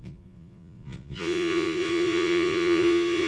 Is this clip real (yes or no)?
no